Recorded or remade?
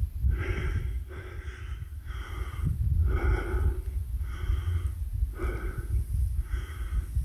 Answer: recorded